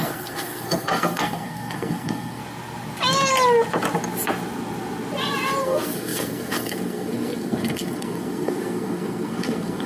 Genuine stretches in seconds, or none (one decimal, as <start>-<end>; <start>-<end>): 2.4-5.6